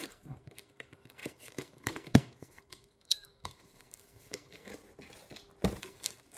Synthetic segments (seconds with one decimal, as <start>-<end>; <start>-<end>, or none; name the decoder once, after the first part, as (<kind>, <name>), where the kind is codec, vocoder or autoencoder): 0.0-4.7 (codec, SNAC); 5.8-6.4